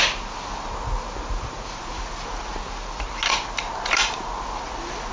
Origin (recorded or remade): recorded